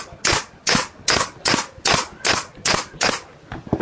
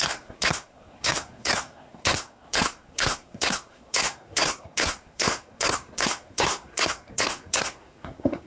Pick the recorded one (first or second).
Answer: first